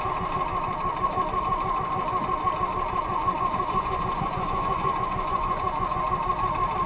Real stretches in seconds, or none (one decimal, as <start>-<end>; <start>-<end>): 0.0-3.1; 6.0-6.9